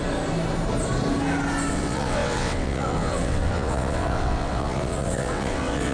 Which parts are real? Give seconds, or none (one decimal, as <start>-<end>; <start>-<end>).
0.0-1.7

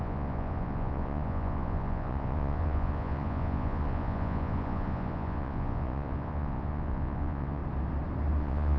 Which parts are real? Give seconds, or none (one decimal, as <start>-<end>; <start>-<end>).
7.6-8.4

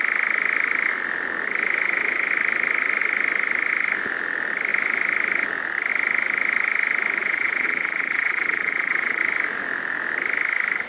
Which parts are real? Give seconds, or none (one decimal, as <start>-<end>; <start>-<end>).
0.0-7.2; 9.2-10.9

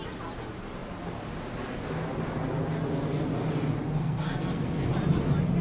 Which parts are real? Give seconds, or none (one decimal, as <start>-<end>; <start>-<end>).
0.0-4.0; 4.9-5.6

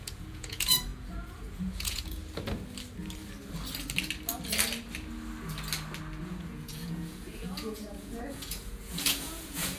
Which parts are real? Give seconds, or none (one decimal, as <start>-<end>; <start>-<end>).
2.2-6.2

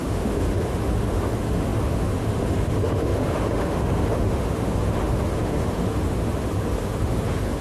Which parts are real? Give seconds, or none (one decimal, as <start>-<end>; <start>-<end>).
none

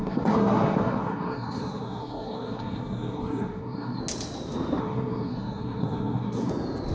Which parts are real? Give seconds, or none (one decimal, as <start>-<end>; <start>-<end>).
4.0-4.8; 6.5-6.9

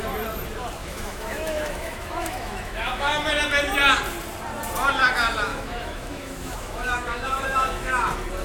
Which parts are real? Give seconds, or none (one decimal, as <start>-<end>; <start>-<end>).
0.0-0.8; 3.3-5.5; 7.9-8.4